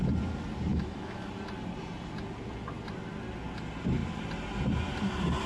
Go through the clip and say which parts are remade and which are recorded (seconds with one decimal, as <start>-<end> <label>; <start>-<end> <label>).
0.0-0.7 recorded; 0.7-1.3 remade; 1.3-5.5 recorded